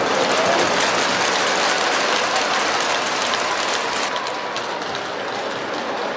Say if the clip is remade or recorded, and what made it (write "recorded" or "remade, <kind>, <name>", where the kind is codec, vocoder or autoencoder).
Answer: recorded